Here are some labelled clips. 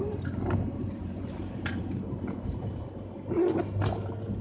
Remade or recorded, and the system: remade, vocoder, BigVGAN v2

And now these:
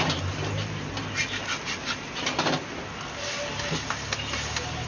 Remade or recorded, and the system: recorded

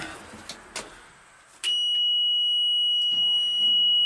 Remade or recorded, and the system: recorded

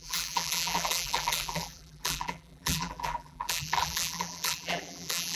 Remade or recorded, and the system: remade, vocoder, BigVGAN v2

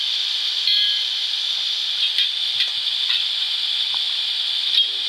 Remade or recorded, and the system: remade, vocoder, BigVGAN v2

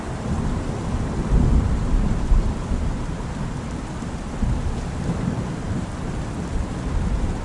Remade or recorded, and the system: remade, vocoder, BigVGAN v2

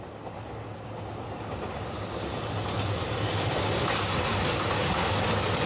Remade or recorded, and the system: recorded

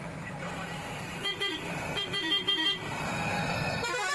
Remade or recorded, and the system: remade, vocoder, BigVGAN v2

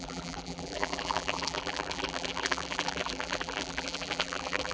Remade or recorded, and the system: remade, vocoder, BigVGAN v2